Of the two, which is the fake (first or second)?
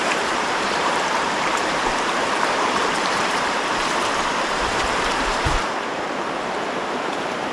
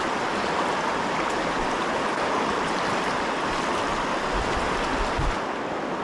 first